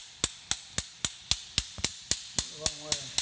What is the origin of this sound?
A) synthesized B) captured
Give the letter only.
B